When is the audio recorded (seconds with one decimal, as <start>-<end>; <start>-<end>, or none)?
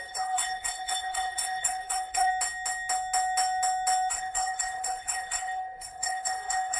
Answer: 2.3-4.1